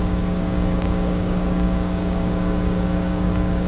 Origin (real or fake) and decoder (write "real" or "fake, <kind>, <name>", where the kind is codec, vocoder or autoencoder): fake, codec, DAC